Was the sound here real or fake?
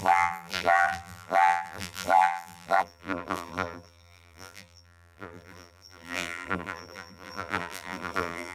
fake